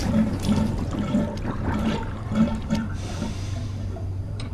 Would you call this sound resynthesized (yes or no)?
yes